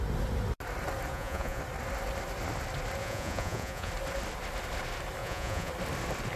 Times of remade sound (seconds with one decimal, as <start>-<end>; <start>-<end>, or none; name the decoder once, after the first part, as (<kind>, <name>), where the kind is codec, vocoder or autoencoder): 1.1-1.6 (vocoder, Vocos); 3.0-3.9; 5.2-5.7